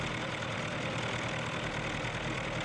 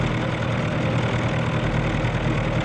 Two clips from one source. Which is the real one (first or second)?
second